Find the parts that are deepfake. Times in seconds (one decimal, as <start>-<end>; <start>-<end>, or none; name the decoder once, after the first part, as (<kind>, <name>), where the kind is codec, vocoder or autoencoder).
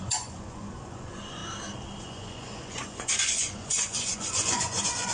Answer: 0.0-1.4 (vocoder, Vocos); 2.0-5.1